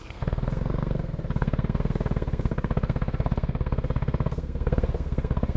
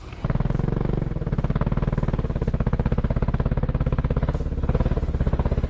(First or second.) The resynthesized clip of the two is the first